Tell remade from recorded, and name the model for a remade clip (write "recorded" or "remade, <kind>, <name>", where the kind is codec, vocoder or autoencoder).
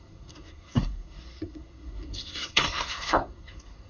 remade, codec, SNAC